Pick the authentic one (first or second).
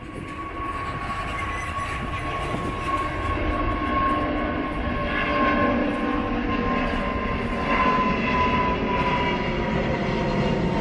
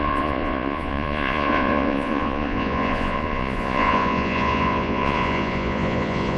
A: first